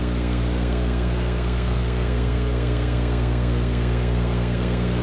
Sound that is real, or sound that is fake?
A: fake